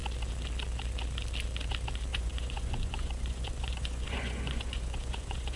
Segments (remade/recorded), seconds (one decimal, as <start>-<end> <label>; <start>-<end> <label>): 0.0-2.1 recorded; 2.1-5.6 remade